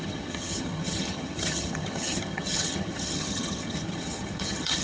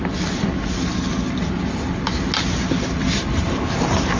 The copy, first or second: first